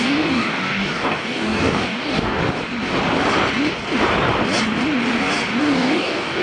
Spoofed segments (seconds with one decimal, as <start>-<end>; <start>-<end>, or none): 0.0-2.4; 5.6-6.4